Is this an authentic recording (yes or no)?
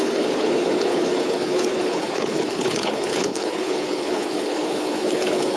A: no